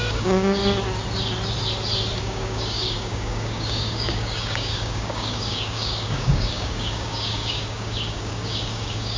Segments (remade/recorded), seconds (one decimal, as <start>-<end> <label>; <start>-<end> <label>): 0.0-0.6 remade; 0.6-2.2 recorded; 2.2-9.2 remade